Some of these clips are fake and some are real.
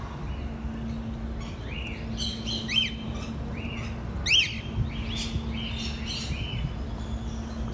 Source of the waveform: real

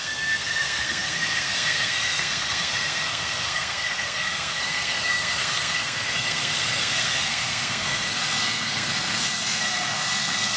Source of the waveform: fake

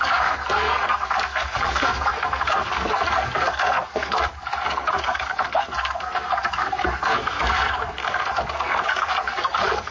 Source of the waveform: fake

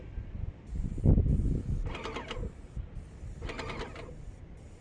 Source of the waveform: real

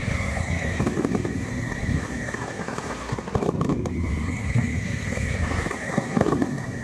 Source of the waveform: fake